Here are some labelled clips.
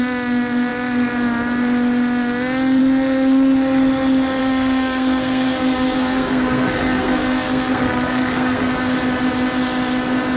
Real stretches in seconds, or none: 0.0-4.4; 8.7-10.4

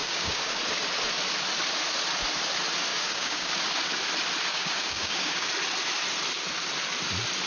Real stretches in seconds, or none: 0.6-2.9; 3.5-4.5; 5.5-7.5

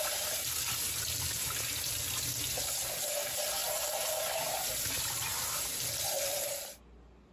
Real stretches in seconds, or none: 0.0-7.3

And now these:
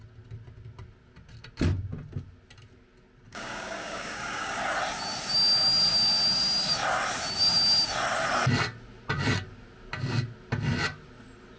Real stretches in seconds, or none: 0.0-3.3; 4.6-11.6

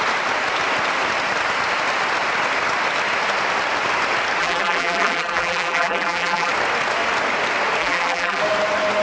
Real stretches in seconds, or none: 0.0-4.4; 6.5-7.8; 8.4-9.0